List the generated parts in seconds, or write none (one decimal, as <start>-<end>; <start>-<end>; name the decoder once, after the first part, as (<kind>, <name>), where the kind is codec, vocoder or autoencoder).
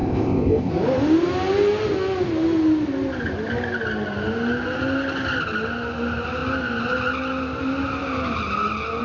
0.0-0.7 (codec, ZipCodec)